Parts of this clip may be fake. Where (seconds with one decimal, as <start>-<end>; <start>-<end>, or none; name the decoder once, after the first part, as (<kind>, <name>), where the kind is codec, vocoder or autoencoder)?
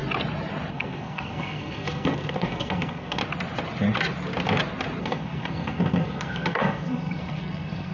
0.7-3.2 (codec, SNAC); 5.0-7.9